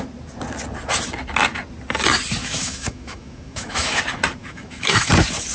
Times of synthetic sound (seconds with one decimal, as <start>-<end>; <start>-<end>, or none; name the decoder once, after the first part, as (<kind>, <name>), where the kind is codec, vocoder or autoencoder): 2.4-4.0 (autoencoder, DAC-VAE); 4.4-5.1